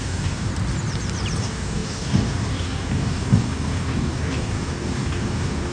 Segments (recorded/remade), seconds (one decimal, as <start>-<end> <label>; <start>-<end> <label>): 0.0-0.5 remade; 0.5-1.4 recorded; 1.4-5.7 remade